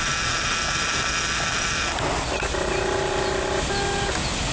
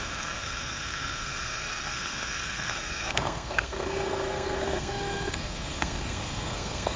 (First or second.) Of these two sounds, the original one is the first